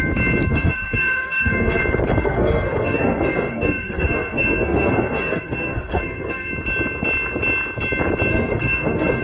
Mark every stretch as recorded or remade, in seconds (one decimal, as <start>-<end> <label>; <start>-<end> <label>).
0.0-0.5 recorded; 0.5-1.8 remade; 1.8-2.2 recorded; 2.2-6.5 remade; 6.5-8.3 recorded; 8.3-9.2 remade